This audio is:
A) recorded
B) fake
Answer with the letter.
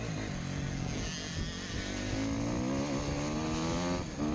A